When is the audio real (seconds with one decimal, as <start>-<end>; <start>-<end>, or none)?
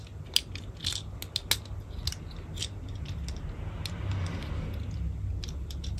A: 0.0-6.0